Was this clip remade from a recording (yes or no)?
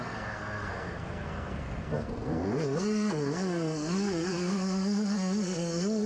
yes